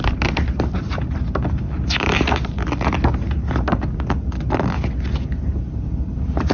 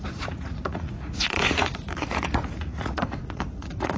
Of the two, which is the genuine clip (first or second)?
first